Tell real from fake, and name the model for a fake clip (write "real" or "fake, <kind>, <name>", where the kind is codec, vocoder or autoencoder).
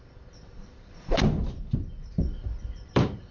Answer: fake, vocoder, BigVGAN v2